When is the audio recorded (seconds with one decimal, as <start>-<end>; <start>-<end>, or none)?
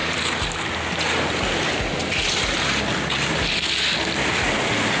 0.0-5.0